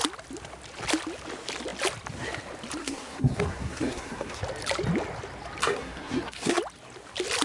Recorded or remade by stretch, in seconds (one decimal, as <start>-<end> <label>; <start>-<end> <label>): 0.0-2.8 recorded; 2.8-4.4 remade; 4.4-5.6 recorded; 5.6-6.6 remade; 6.6-7.4 recorded